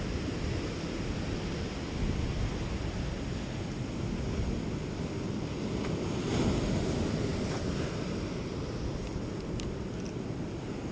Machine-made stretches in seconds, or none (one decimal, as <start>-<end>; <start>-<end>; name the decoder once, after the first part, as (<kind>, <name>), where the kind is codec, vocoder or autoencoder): none